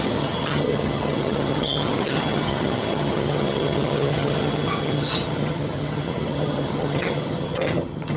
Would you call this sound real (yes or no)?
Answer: no